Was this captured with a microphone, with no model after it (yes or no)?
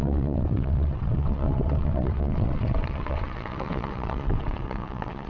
no